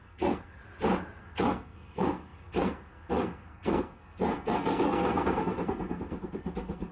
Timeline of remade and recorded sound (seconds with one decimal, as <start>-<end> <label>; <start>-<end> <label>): 0.0-0.6 remade; 0.6-1.2 recorded; 1.2-6.9 remade